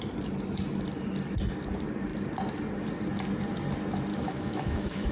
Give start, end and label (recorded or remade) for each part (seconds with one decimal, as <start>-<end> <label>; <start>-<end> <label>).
0.0-4.1 recorded; 4.1-5.1 remade